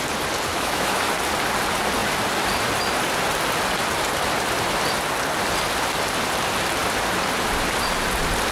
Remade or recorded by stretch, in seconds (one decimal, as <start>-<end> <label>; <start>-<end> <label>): 0.0-0.5 recorded; 0.5-1.1 remade; 1.1-8.5 recorded